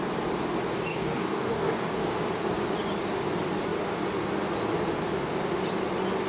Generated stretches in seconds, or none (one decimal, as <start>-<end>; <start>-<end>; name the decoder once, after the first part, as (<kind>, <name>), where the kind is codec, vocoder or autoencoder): 0.9-2.1 (codec, DAC)